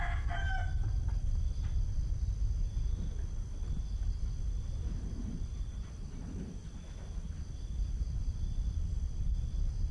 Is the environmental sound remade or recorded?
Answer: recorded